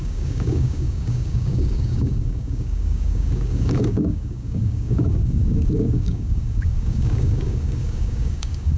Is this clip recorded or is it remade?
remade